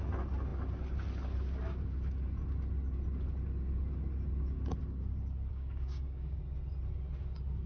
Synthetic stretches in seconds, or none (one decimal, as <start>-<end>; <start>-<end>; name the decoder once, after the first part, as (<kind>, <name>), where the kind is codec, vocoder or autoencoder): 5.5-6.4 (codec, DAC)